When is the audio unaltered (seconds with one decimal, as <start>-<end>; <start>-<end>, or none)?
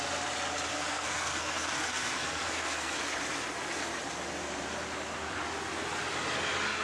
0.0-0.7; 3.0-6.8